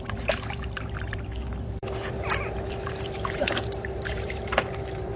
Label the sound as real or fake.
fake